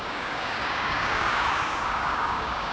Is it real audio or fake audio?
fake